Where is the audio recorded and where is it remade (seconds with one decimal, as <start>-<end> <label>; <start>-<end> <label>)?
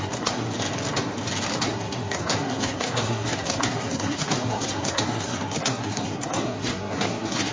0.0-0.4 remade; 0.4-1.6 recorded; 1.6-7.5 remade